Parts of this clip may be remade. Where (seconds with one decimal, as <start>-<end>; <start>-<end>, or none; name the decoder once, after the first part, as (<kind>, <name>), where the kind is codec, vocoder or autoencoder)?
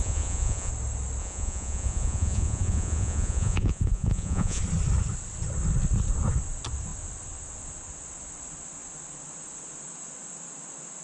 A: 0.0-0.7 (vocoder, Vocos); 1.2-4.6